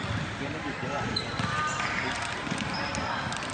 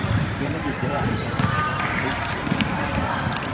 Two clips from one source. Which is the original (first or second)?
first